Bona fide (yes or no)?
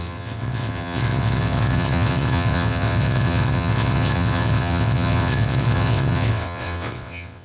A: no